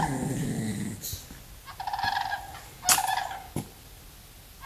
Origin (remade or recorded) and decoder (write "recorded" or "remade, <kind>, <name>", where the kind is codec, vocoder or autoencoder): recorded